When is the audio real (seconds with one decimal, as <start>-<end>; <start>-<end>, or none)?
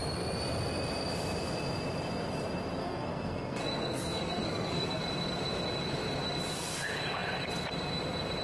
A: 0.0-2.8; 5.0-8.4